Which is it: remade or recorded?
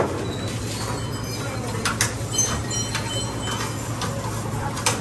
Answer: recorded